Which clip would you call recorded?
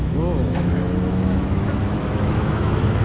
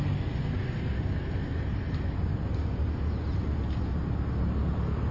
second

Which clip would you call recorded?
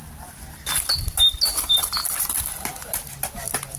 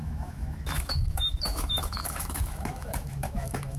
first